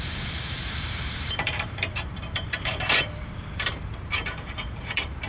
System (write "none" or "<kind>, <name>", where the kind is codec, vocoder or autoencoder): vocoder, BigVGAN v2